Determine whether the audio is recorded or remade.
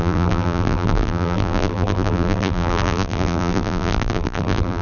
remade